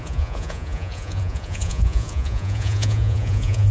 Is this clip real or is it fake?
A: fake